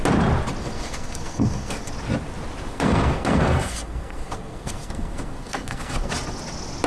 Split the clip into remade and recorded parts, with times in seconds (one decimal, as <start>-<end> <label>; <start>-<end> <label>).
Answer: 0.0-0.6 recorded; 0.6-1.9 remade; 1.9-2.7 recorded; 2.7-6.1 remade; 6.1-6.9 recorded